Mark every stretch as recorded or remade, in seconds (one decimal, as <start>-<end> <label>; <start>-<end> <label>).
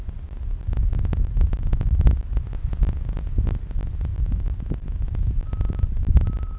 0.0-6.6 recorded